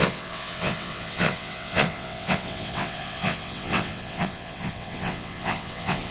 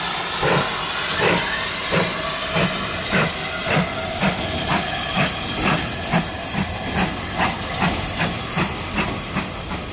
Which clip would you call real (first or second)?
second